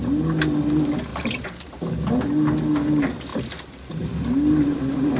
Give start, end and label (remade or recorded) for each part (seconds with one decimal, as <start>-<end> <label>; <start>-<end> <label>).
0.0-1.1 recorded; 1.1-1.9 remade; 1.9-5.2 recorded